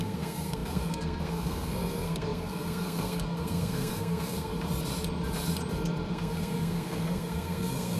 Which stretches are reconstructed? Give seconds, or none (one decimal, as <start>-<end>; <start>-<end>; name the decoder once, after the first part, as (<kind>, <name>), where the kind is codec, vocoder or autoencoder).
0.0-4.5 (codec, SNAC); 6.1-8.0